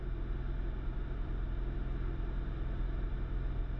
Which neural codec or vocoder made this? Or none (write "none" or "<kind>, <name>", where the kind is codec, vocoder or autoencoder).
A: none